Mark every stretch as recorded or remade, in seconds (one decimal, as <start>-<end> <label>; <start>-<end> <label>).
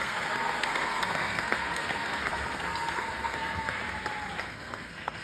0.0-3.8 remade; 3.8-4.4 recorded; 4.4-5.2 remade